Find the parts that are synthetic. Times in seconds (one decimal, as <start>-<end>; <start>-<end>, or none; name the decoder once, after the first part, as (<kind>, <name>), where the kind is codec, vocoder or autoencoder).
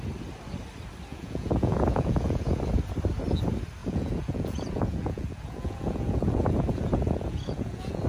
1.1-2.6 (vocoder, Vocos); 3.8-8.1